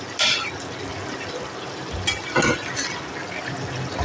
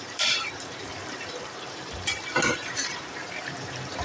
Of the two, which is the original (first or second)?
first